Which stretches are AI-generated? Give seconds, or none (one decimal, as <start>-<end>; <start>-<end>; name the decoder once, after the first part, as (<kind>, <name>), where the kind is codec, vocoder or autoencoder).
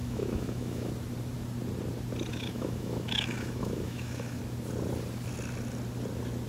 0.0-0.9 (autoencoder, DAC-VAE); 2.3-4.4